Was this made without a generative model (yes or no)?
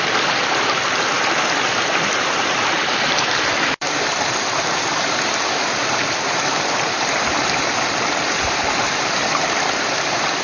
no